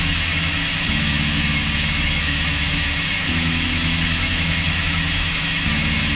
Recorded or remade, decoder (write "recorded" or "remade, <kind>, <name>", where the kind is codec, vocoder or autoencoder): remade, autoencoder, DAC-VAE